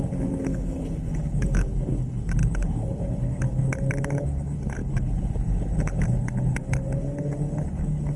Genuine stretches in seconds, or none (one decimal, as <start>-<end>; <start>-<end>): none